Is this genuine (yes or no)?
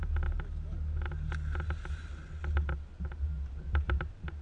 yes